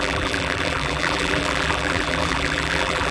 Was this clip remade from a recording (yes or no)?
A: yes